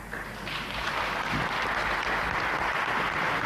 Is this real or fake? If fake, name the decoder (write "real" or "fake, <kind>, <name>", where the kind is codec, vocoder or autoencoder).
real